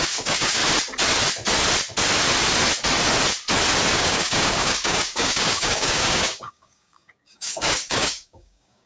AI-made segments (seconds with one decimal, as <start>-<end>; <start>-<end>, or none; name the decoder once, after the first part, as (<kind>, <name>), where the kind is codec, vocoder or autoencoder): 0.0-0.6 (codec, DAC); 3.9-8.9